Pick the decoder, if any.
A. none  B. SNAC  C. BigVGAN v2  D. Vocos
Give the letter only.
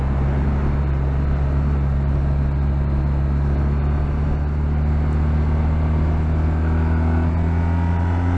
A